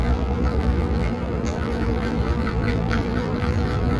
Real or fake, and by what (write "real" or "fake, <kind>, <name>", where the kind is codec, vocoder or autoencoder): fake, vocoder, BigVGAN v2